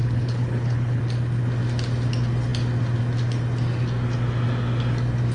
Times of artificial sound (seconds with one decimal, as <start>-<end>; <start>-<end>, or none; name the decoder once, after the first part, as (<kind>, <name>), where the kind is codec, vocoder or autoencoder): 0.0-1.0 (codec, HILCodec)